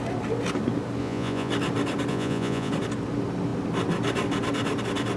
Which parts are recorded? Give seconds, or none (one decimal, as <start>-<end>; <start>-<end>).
0.0-1.0; 1.5-2.1; 2.7-5.2